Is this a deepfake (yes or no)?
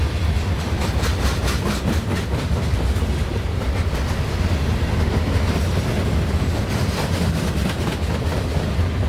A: no